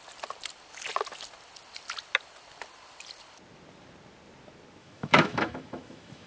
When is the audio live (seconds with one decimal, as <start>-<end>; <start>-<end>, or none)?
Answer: 0.0-4.8